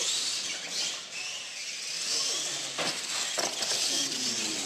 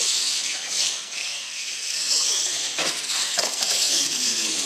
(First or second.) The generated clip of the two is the second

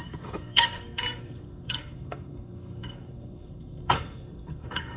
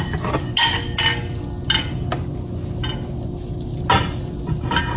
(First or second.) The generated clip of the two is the first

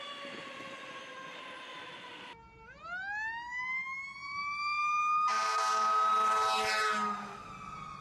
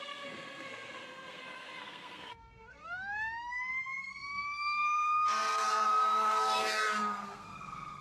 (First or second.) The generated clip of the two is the second